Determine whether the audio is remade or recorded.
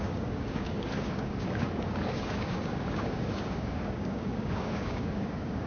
remade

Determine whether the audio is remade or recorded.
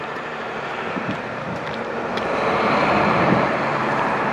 remade